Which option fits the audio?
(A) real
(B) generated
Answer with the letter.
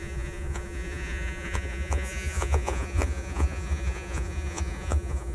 B